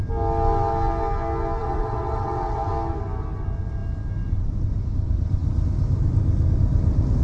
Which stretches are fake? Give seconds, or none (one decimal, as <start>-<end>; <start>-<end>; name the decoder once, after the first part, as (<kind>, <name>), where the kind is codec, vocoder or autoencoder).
1.6-2.7 (vocoder, WaveNeXt)